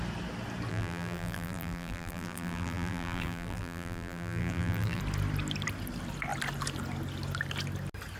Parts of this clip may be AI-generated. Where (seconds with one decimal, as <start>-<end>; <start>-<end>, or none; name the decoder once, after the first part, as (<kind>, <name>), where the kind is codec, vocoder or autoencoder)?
0.7-5.0 (vocoder, BigVGAN v2)